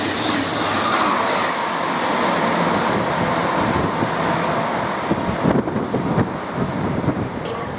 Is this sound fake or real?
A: real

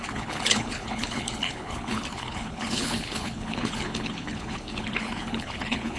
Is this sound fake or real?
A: fake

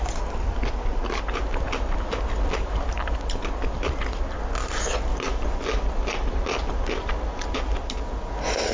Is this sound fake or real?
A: real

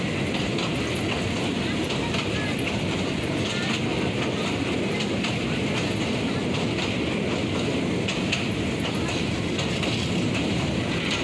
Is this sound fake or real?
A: real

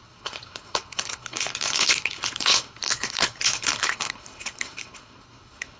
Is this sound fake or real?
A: fake